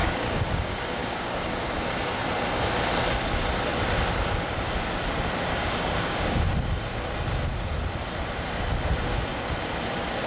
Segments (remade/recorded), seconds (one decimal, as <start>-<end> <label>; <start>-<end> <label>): 0.0-1.4 remade; 1.4-5.5 recorded; 5.5-6.5 remade; 6.5-10.3 recorded